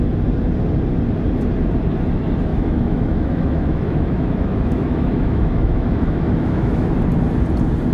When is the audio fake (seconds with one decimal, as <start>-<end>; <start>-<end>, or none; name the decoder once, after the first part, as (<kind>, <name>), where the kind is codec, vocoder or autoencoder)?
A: 2.5-6.9 (autoencoder, DAC-VAE)